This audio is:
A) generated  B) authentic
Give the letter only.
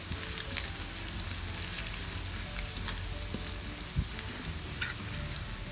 B